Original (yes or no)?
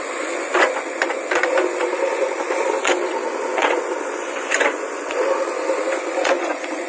no